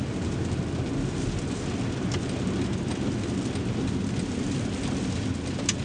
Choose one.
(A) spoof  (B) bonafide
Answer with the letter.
B